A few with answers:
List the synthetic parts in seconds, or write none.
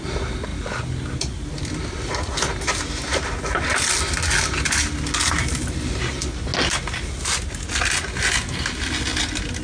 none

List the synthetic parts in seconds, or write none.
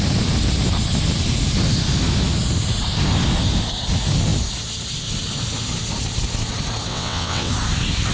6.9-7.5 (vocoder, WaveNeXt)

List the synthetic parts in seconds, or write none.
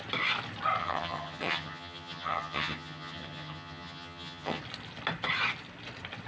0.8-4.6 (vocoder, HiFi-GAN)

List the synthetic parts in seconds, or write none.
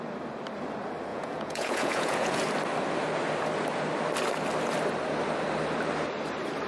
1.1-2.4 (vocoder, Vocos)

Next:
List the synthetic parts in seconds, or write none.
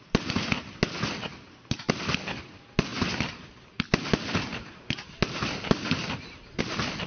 none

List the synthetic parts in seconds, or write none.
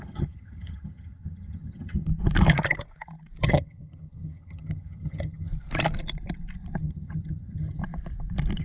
0.0-2.1 (vocoder, HiFi-GAN); 3.4-5.5; 6.8-7.8